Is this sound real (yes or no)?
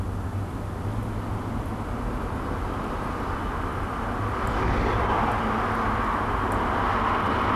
yes